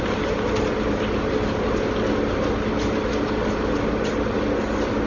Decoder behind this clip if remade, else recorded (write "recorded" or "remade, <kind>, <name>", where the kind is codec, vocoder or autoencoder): recorded